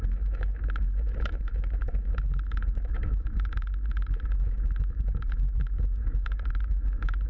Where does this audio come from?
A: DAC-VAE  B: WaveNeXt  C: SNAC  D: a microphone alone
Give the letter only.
A